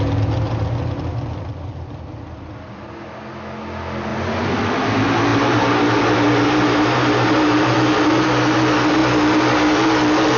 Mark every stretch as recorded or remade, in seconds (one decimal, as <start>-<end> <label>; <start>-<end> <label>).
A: 0.0-10.4 recorded